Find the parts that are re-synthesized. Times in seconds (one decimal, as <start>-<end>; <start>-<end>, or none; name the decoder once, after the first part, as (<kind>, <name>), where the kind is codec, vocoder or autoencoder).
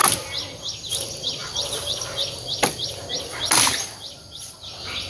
none